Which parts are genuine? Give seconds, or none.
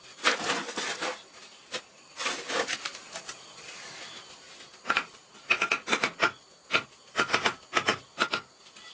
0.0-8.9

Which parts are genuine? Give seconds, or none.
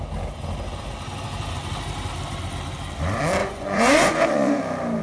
0.0-3.4; 4.6-5.0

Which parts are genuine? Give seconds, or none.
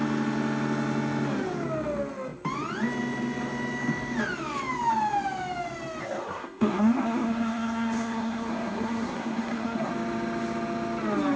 0.0-6.0; 9.9-11.4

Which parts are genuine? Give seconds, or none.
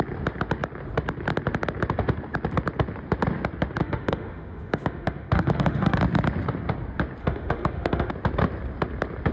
0.0-3.8; 6.0-7.2; 8.1-9.3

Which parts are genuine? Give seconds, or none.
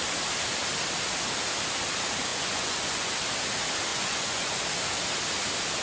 0.0-2.3; 3.1-3.9; 4.5-5.8